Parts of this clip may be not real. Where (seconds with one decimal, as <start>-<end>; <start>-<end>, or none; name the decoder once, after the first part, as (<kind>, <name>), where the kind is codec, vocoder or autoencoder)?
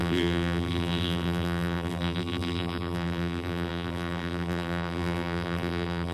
0.0-6.1 (vocoder, BigVGAN v2)